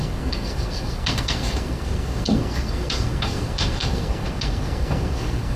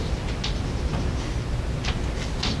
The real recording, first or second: second